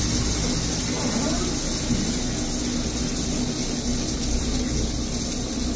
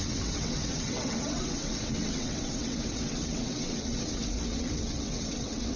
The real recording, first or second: first